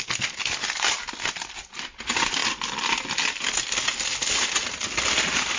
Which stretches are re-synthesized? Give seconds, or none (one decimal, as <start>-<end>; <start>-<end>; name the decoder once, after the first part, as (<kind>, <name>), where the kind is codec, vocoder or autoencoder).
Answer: none